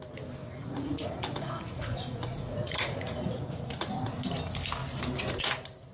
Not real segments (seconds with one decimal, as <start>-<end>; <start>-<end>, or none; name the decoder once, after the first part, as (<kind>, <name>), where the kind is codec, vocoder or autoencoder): 0.4-3.9 (vocoder, Vocos)